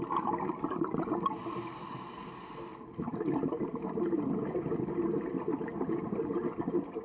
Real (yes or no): yes